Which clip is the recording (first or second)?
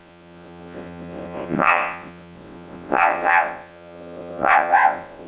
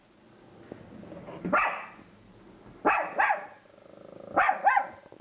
second